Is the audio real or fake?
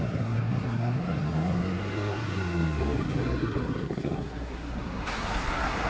fake